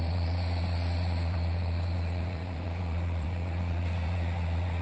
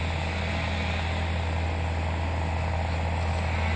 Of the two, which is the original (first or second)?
second